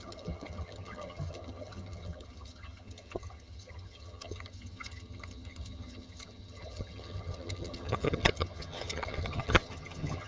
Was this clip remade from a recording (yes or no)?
yes